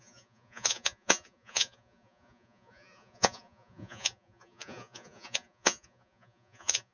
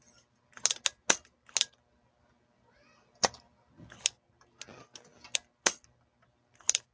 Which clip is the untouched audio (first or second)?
second